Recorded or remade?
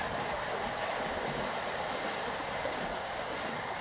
recorded